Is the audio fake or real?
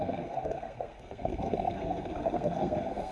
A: fake